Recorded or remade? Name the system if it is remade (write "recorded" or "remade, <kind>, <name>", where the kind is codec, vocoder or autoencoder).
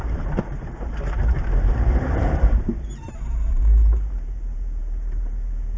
remade, vocoder, BigVGAN v2